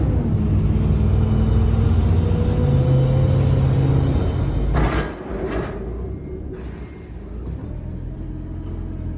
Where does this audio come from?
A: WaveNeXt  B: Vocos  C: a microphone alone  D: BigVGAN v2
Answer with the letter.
C